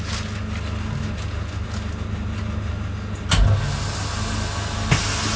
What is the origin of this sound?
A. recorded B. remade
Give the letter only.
A